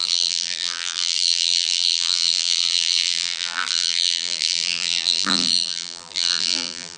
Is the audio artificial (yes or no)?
yes